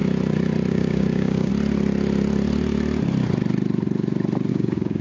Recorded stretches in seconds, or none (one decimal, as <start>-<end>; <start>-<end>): 0.0-0.7; 1.5-4.5

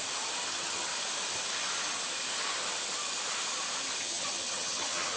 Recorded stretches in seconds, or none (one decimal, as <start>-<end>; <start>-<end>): 0.0-0.5; 0.9-4.0

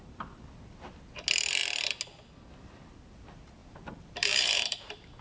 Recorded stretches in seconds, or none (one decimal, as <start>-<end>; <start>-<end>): 0.0-3.6

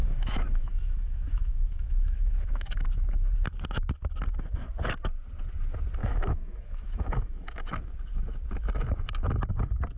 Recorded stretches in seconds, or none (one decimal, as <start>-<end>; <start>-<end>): 2.7-6.0; 7.7-10.0

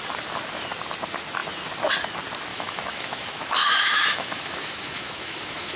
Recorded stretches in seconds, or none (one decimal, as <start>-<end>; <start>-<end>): 0.0-2.5

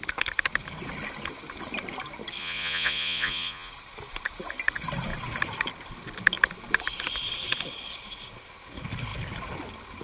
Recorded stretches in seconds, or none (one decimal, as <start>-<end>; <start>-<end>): 0.0-2.4; 3.7-10.0